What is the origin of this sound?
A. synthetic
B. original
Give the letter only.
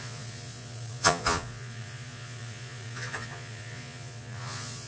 A